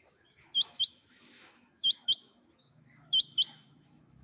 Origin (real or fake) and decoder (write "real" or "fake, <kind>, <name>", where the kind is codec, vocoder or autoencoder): fake, autoencoder, DAC-VAE